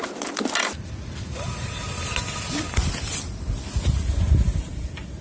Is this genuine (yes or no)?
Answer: yes